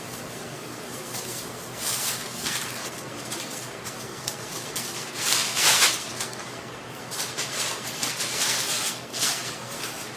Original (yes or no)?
no